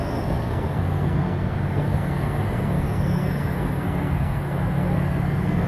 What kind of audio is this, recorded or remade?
remade